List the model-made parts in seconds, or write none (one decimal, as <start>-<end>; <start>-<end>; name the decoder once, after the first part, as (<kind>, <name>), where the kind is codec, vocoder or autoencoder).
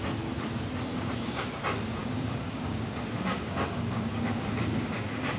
0.9-1.5 (codec, DAC); 2.0-5.4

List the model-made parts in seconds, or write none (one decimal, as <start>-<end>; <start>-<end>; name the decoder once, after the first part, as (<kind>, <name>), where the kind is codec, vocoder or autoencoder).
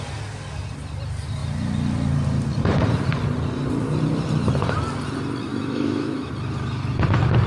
5.5-6.3 (autoencoder, DAC-VAE)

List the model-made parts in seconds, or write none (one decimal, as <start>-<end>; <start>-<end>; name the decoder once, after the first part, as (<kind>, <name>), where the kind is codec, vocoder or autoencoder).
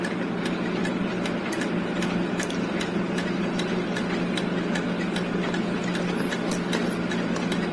0.8-1.5 (vocoder, BigVGAN v2)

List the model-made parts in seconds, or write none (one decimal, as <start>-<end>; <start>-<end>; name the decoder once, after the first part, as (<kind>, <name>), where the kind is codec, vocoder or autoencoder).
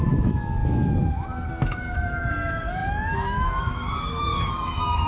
0.0-5.1 (autoencoder, DAC-VAE)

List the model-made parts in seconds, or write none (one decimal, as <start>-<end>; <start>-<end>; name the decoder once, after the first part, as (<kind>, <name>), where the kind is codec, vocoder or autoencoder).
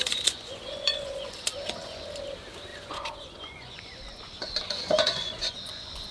0.0-2.0 (vocoder, Vocos); 2.7-6.1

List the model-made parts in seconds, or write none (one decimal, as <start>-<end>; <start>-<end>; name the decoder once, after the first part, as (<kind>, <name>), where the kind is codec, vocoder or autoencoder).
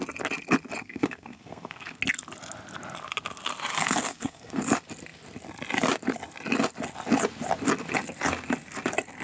0.8-2.0 (codec, SNAC); 3.7-4.6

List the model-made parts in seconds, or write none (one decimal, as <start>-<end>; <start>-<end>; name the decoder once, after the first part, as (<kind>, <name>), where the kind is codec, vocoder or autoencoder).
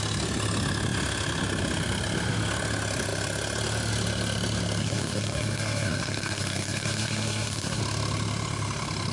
4.8-7.8 (codec, SNAC)